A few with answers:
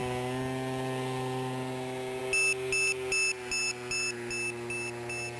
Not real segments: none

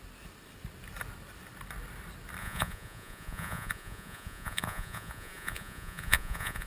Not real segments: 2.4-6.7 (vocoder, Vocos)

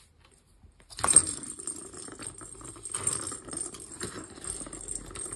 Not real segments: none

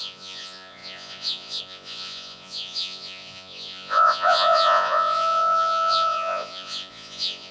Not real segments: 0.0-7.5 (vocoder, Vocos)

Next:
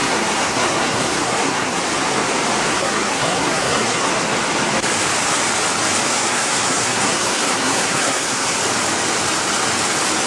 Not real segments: 0.0-1.8 (codec, SNAC); 2.7-4.1; 6.1-8.6